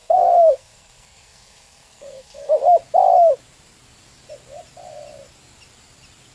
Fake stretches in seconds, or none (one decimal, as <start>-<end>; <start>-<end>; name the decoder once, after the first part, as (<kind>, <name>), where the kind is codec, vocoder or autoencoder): 0.0-2.6 (codec, SNAC)

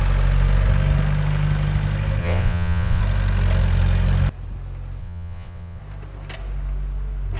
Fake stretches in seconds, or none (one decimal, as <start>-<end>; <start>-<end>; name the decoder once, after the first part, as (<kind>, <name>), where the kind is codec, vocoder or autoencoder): 2.2-3.0 (vocoder, WaveNeXt); 5.0-5.8